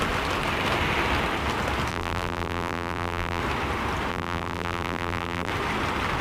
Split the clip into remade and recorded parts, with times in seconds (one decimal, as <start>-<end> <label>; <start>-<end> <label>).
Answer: 0.0-1.9 recorded; 1.9-3.4 remade; 3.4-4.1 recorded; 4.1-5.5 remade; 5.5-6.2 recorded